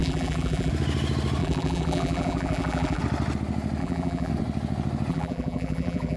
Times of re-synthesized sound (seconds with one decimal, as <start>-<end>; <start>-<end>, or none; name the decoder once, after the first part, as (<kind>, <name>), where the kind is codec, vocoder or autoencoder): 0.0-0.7 (vocoder, BigVGAN v2); 1.4-3.0; 3.8-4.3; 5.1-6.2